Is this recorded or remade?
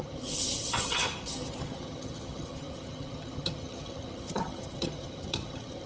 remade